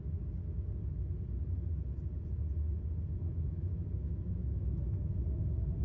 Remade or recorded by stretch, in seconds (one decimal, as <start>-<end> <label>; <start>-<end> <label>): 0.0-3.3 recorded; 3.3-5.0 remade; 5.0-5.8 recorded